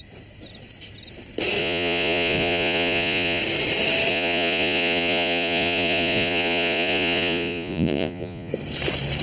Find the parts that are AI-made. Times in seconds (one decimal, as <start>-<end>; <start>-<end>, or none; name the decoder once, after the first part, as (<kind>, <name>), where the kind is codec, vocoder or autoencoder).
1.6-3.4 (vocoder, Vocos); 4.1-8.5